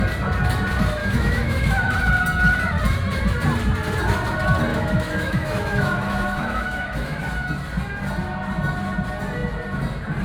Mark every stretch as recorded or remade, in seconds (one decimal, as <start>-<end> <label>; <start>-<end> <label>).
0.0-1.0 recorded; 1.0-2.1 remade; 2.1-4.7 recorded; 4.7-7.2 remade; 7.2-10.2 recorded